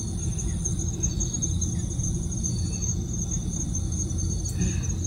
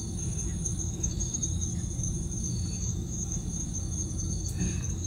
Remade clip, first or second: second